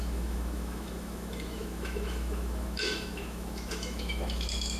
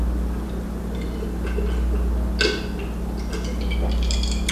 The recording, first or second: second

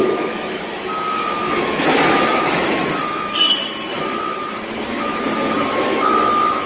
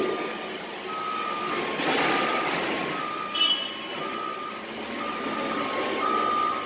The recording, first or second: second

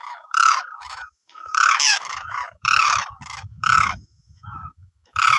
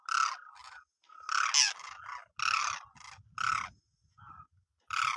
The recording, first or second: second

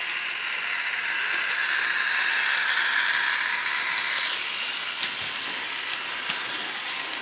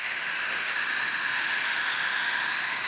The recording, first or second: first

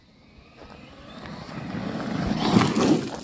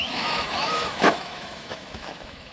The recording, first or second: first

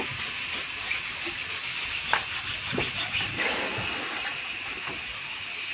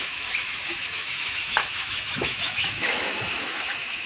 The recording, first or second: first